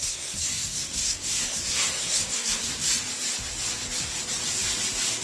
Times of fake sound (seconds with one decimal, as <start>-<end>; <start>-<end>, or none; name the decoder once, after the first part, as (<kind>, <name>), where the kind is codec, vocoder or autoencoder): 0.0-3.0 (codec, SNAC)